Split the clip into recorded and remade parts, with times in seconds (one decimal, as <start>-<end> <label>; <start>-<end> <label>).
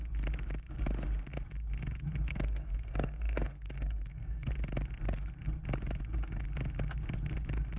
0.0-2.3 recorded; 2.3-4.5 remade; 4.5-7.8 recorded